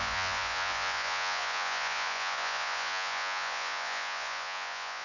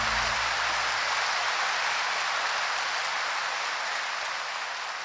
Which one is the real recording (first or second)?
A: second